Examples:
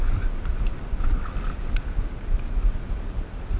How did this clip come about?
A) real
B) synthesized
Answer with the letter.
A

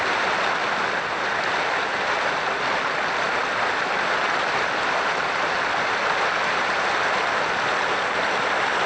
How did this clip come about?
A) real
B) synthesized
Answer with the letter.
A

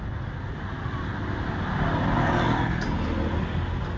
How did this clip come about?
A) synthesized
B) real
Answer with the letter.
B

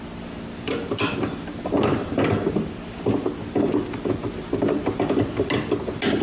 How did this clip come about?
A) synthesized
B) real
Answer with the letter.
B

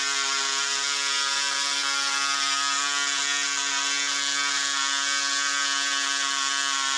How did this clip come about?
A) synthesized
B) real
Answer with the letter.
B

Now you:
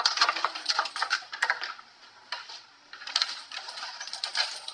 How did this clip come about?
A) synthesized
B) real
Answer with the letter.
B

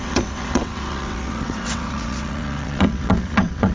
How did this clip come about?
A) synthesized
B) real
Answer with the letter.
A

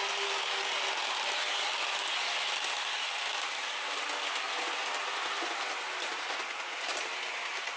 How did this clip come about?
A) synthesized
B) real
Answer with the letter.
B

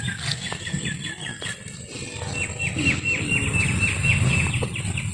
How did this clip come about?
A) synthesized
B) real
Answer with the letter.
B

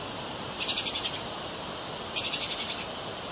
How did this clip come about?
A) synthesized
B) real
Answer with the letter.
B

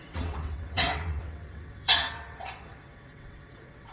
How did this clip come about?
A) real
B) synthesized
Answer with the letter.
B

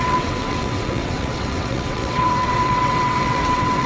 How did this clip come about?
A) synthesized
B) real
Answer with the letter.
A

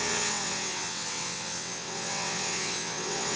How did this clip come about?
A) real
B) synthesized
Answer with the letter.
B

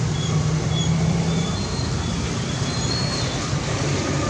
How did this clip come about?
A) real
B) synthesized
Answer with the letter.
A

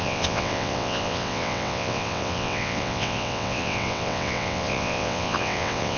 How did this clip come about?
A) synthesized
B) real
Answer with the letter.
A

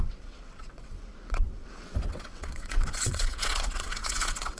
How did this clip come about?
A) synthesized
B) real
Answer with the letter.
A